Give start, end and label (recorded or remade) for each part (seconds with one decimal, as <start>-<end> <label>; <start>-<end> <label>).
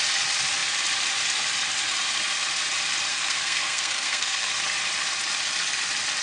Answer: 0.0-3.1 recorded; 3.1-4.5 remade; 4.5-6.2 recorded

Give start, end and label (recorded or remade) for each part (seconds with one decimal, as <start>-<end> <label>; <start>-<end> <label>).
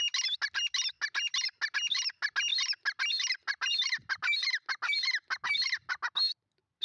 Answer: 0.0-6.8 recorded